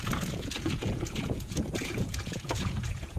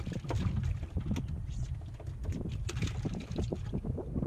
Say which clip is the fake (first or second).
first